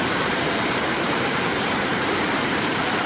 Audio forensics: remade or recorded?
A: remade